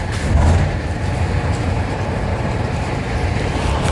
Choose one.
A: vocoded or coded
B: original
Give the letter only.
A